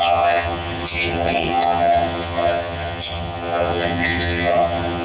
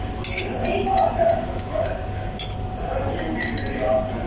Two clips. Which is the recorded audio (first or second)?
second